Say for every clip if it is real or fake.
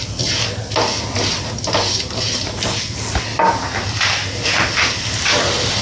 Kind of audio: real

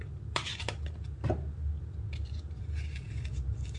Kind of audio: real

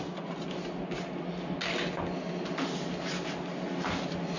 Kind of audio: real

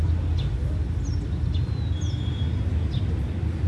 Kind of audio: real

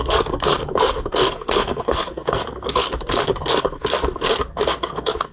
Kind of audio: fake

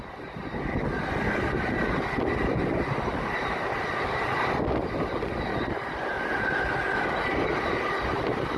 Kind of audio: real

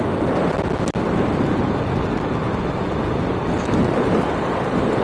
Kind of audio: real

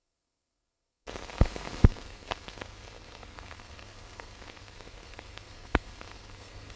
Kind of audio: fake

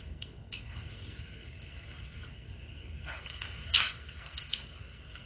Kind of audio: fake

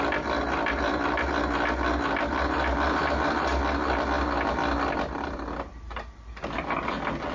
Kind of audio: real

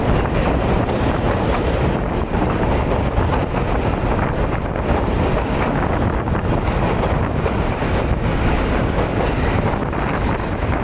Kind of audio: real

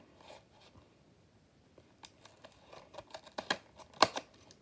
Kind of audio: real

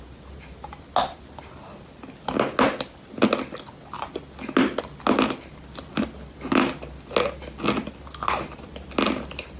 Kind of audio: real